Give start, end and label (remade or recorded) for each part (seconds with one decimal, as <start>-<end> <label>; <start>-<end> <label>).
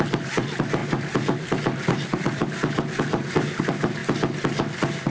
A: 0.0-4.0 remade; 4.0-5.1 recorded